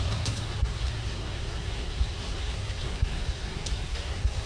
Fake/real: fake